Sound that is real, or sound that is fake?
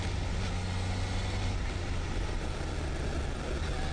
real